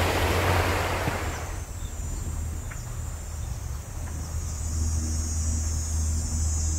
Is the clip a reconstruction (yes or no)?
no